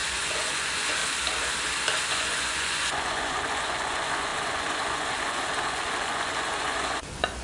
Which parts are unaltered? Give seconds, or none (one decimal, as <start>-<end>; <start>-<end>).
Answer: 1.0-2.1